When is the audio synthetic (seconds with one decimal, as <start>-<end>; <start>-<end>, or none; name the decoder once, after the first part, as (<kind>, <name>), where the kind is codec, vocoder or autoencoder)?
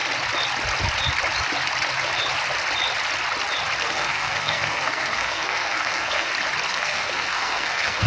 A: 3.8-6.3 (codec, SNAC); 6.7-8.1